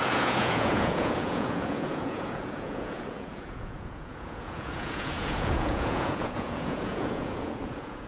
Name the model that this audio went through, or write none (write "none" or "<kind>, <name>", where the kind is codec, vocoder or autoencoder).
vocoder, Vocos